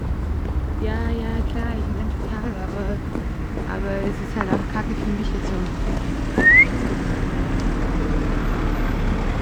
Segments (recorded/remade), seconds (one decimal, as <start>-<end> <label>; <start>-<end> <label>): 0.0-1.3 recorded; 1.3-3.4 remade; 3.4-9.4 recorded